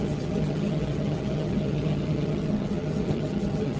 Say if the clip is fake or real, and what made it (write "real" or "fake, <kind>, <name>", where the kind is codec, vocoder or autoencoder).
fake, vocoder, HiFi-GAN